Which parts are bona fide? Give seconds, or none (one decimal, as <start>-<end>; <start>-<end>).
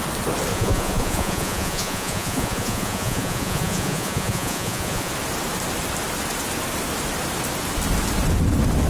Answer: 0.0-0.5; 5.1-8.9